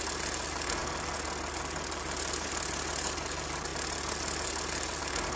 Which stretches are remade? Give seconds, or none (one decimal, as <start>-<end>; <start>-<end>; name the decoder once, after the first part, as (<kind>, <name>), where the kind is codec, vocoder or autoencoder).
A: none